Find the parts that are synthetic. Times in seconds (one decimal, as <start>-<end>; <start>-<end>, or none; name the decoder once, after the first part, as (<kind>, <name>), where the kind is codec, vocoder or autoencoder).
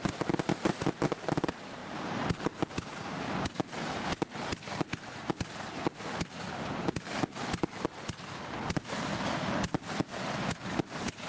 1.8-2.7 (vocoder, BigVGAN v2)